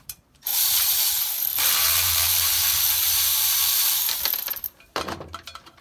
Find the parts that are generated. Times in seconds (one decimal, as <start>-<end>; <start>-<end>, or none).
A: 0.0-5.8